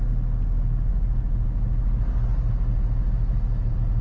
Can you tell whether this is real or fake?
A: real